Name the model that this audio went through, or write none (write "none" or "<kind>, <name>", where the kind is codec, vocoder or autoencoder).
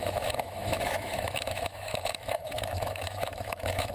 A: autoencoder, DAC-VAE